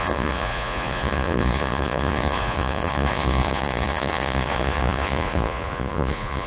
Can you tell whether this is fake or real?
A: fake